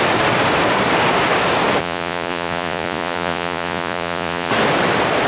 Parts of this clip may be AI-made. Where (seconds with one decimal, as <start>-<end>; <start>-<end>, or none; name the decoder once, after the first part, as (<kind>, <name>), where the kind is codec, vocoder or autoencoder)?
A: 1.8-4.5 (vocoder, Vocos)